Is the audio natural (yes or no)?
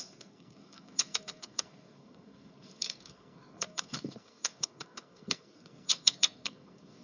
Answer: no